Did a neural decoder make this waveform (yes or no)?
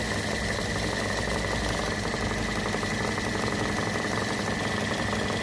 no